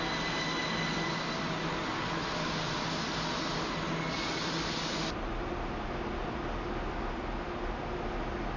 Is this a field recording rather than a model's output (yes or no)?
yes